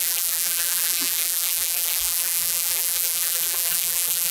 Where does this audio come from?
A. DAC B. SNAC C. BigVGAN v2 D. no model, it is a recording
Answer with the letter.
C